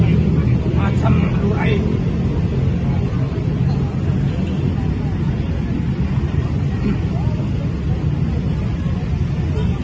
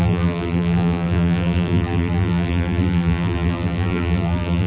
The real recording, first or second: first